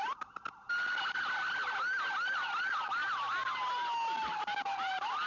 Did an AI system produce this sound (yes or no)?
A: no